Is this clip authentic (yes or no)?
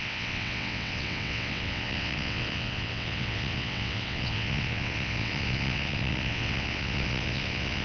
no